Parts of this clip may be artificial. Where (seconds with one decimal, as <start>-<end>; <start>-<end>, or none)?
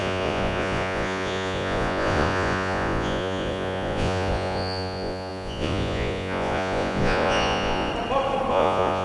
0.0-7.9; 8.5-9.0